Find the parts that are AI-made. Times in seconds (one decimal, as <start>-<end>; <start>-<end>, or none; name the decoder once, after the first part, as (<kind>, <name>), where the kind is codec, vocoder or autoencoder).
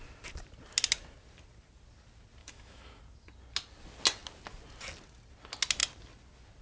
2.4-3.0 (autoencoder, DAC-VAE)